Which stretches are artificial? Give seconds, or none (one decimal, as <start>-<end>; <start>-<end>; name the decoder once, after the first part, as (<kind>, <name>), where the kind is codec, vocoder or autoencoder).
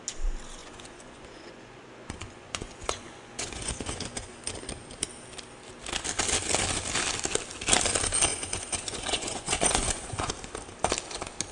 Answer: 0.6-4.4 (vocoder, Vocos); 8.3-10.3